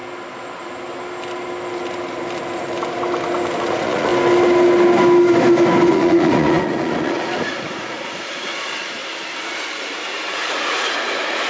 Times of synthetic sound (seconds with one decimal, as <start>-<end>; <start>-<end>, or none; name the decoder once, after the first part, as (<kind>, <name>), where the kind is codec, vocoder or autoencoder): 3.6-4.1 (vocoder, Vocos); 5.9-9.0; 10.3-11.5